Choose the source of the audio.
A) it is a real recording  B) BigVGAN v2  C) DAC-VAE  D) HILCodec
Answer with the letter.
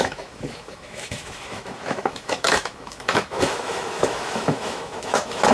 C